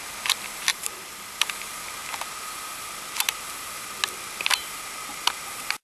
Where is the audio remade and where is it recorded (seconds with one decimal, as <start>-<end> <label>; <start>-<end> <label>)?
0.0-0.7 recorded; 0.7-1.4 remade; 1.4-5.8 recorded